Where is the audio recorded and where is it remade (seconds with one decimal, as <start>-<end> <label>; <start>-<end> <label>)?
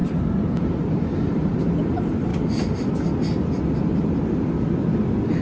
0.0-1.6 remade; 1.6-5.4 recorded